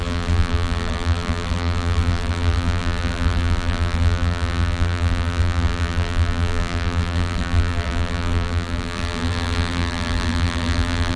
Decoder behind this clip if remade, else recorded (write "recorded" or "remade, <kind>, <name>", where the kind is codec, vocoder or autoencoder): remade, vocoder, BigVGAN v2